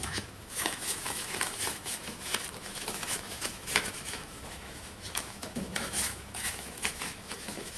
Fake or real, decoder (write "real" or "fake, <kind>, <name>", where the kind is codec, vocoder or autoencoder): fake, autoencoder, DAC-VAE